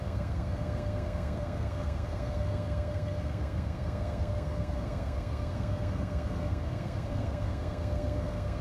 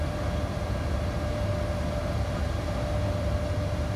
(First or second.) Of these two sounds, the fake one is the first